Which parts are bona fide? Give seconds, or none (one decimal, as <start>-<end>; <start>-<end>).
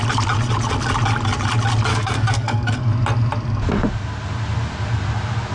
0.0-1.9; 2.8-5.5